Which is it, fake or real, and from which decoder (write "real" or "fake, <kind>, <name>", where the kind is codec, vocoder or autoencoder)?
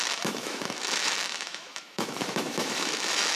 fake, autoencoder, DAC-VAE